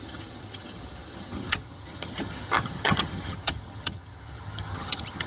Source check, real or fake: fake